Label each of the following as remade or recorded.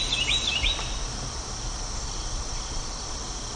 recorded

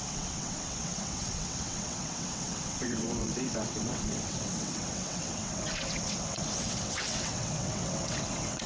remade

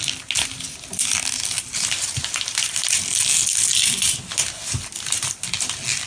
recorded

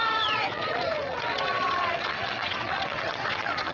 remade